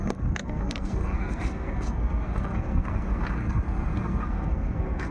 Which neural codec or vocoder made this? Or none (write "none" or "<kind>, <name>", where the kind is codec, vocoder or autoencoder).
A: codec, SNAC